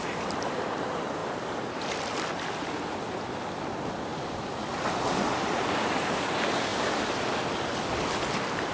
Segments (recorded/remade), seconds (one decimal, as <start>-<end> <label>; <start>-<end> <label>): 0.0-4.1 recorded; 4.1-6.0 remade; 6.0-8.7 recorded